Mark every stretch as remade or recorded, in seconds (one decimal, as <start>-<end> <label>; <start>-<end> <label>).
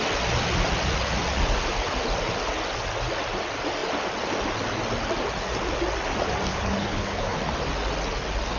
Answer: 0.0-6.5 recorded; 6.5-7.4 remade; 7.4-8.6 recorded